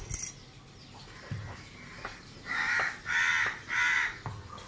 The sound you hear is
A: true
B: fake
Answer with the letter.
A